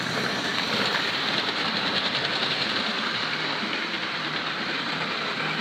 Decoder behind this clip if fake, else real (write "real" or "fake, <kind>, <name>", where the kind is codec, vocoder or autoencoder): fake, vocoder, BigVGAN v2